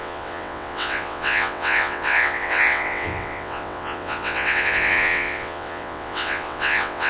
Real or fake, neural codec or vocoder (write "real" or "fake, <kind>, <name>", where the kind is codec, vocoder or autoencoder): fake, vocoder, WaveNeXt